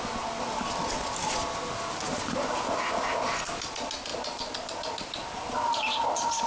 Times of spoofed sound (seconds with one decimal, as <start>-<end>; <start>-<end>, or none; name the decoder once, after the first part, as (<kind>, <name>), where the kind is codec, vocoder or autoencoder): none